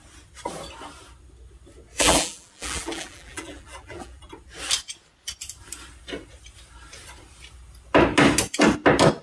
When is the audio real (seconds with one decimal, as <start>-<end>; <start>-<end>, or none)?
0.0-1.9; 4.3-9.2